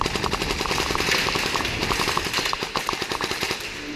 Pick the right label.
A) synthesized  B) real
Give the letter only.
B